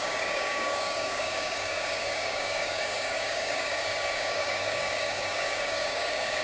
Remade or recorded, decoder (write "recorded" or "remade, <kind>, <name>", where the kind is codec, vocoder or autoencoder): remade, codec, DAC